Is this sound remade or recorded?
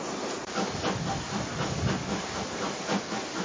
recorded